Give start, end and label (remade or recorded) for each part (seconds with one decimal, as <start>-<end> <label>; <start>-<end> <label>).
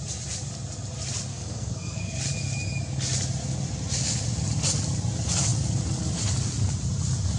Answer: 0.0-1.3 recorded; 1.3-2.2 remade; 2.2-7.4 recorded